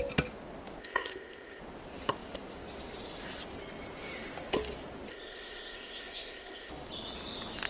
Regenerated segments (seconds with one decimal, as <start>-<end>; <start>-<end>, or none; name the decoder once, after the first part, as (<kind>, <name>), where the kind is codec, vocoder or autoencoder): 0.8-1.6 (codec, ZipCodec); 5.1-6.7